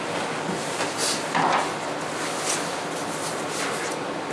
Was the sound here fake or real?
real